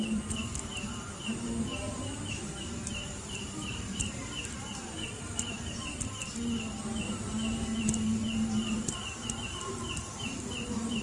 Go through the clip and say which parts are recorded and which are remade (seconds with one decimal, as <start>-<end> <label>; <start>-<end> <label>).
0.0-0.7 remade; 0.7-2.3 recorded; 2.3-6.2 remade; 6.2-7.0 recorded; 7.0-7.7 remade; 7.7-8.8 recorded; 8.8-11.0 remade